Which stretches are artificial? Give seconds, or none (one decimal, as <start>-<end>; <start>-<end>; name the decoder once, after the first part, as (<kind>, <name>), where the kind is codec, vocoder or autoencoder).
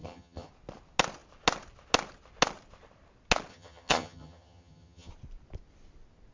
0.0-0.5 (vocoder, HiFi-GAN); 3.5-5.1